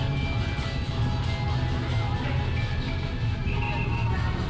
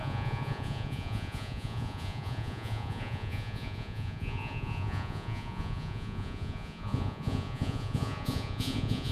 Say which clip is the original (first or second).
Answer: first